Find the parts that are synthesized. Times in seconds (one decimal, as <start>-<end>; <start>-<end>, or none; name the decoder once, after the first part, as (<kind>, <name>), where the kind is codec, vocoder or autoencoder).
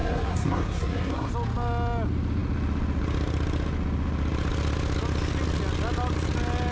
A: 0.0-1.3 (codec, SNAC)